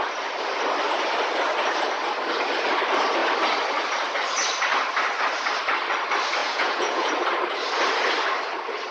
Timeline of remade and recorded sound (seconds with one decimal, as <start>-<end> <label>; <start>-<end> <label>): 0.0-6.4 recorded; 6.4-7.1 remade; 7.1-8.9 recorded